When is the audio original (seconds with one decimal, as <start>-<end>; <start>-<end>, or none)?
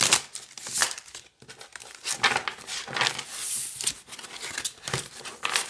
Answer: 0.0-5.7